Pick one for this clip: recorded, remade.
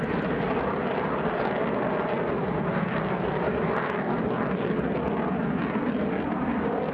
recorded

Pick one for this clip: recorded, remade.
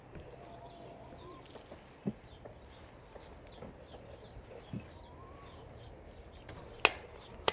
recorded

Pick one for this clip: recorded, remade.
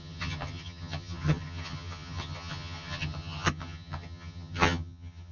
remade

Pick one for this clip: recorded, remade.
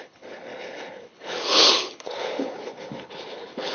remade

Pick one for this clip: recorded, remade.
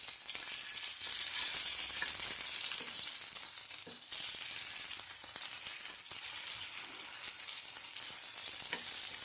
recorded